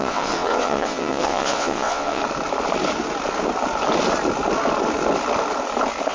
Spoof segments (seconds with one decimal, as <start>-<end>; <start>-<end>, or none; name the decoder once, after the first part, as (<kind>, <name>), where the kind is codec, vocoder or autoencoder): 0.0-2.2 (vocoder, WaveNeXt)